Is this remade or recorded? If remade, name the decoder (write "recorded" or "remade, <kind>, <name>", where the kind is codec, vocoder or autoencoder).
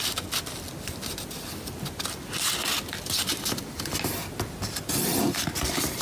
recorded